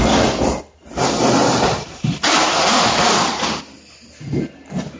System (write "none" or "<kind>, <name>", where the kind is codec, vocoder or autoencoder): none